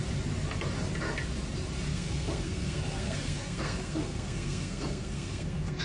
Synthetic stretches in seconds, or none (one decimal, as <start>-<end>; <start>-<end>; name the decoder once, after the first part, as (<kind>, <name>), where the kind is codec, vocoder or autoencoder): 1.9-5.8 (codec, SNAC)